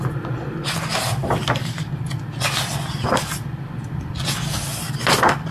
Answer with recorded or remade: recorded